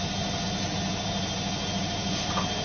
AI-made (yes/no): no